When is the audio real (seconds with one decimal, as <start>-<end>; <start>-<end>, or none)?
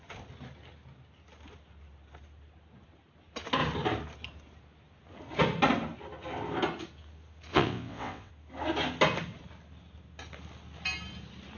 0.0-7.5; 8.3-11.6